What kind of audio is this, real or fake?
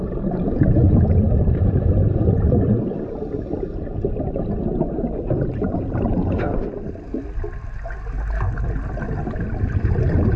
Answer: real